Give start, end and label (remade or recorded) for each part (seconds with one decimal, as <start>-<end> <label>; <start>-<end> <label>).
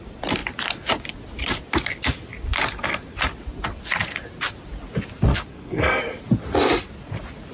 0.0-5.5 recorded; 5.5-6.0 remade; 6.0-7.5 recorded